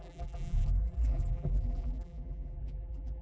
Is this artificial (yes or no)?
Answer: yes